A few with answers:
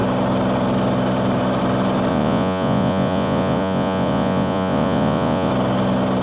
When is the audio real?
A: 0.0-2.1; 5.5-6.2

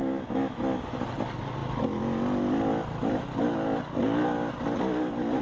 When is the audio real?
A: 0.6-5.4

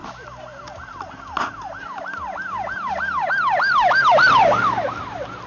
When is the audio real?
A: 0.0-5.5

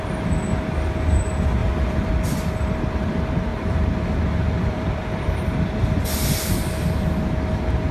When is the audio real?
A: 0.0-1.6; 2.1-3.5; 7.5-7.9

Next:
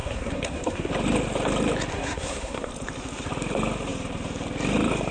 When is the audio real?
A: 0.9-1.9; 2.7-5.1

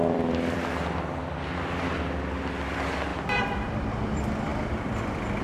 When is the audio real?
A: 0.6-3.1; 4.0-5.4